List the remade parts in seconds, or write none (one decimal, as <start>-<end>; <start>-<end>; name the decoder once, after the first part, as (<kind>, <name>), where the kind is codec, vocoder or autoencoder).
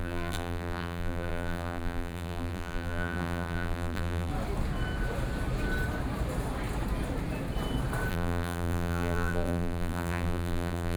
0.0-4.3 (vocoder, BigVGAN v2); 8.1-11.0